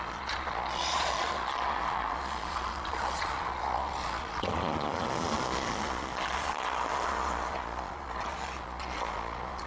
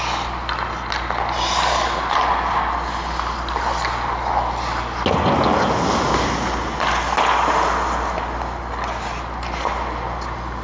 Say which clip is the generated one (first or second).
first